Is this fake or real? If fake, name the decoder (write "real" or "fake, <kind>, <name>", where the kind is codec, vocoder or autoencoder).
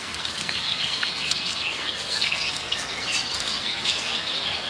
fake, codec, SNAC